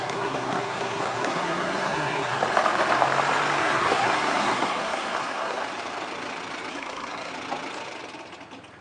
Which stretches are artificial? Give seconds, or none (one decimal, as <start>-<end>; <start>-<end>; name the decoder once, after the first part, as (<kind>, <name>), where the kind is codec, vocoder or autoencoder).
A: 0.0-2.4 (codec, SNAC); 3.6-5.6; 6.7-7.3